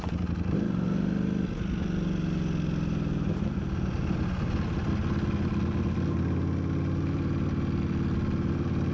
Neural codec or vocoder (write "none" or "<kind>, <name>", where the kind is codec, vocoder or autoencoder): none